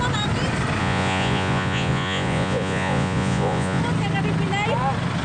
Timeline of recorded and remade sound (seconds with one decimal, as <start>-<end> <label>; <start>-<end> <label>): 0.0-0.8 recorded; 0.8-3.8 remade; 3.8-5.2 recorded